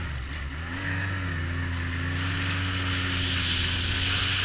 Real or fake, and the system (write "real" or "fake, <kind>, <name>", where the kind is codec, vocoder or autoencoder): real